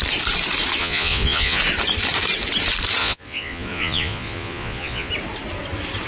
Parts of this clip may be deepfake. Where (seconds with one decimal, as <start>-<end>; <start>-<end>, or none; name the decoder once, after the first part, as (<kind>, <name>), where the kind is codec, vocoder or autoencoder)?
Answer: 0.8-1.6 (vocoder, Vocos); 3.0-5.1